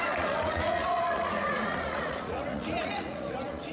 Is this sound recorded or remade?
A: remade